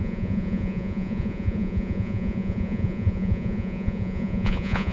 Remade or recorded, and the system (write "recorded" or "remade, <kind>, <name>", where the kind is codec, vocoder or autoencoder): remade, vocoder, Vocos